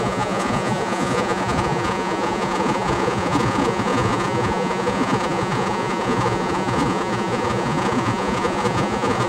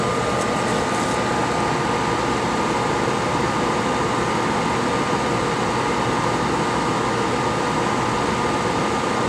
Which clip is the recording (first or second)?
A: second